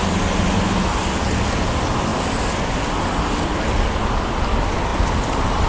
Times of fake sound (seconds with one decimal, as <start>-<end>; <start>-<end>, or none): none